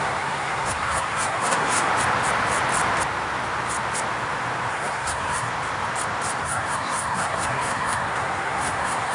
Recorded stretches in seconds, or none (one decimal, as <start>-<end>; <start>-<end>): 1.9-4.7; 5.5-6.4